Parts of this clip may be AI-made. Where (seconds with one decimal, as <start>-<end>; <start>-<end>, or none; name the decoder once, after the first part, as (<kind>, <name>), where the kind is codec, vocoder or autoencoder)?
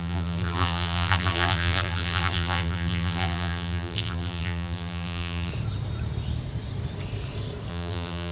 0.0-5.5 (vocoder, BigVGAN v2); 7.7-8.3